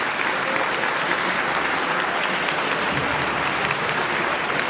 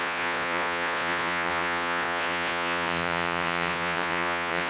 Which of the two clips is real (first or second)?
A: first